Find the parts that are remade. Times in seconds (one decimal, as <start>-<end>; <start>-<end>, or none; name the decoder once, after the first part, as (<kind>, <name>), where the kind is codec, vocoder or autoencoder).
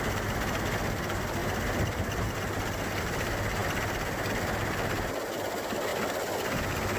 none